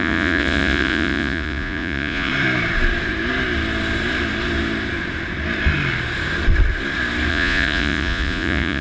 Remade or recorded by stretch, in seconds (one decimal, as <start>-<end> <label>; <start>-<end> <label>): 0.0-2.3 remade; 2.3-7.3 recorded; 7.3-8.8 remade